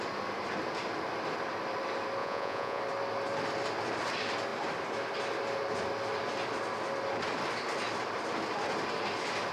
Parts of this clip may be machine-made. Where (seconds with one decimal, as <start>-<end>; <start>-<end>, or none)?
2.2-2.8